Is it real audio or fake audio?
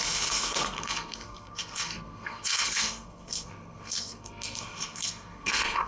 fake